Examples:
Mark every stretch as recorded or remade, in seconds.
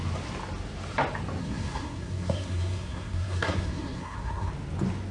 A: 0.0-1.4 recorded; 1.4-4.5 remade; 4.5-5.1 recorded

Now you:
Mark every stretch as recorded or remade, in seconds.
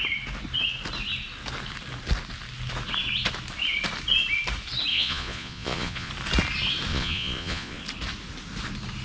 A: 0.0-4.9 recorded; 4.9-6.1 remade; 6.1-6.9 recorded; 6.9-7.8 remade; 7.8-9.0 recorded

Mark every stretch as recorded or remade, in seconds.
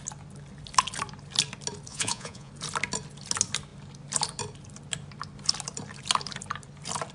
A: 0.0-1.9 recorded; 1.9-2.5 remade; 2.5-7.1 recorded